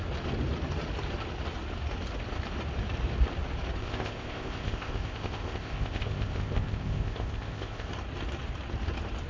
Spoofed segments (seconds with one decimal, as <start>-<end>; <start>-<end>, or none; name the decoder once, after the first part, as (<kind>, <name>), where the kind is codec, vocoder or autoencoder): 3.8-7.9 (codec, ZipCodec)